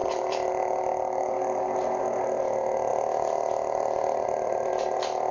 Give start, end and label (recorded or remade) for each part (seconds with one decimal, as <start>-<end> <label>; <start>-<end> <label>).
0.0-0.5 remade; 0.5-2.9 recorded; 2.9-4.7 remade; 4.7-5.3 recorded